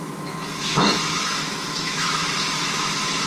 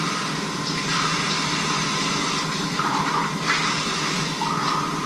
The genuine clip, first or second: second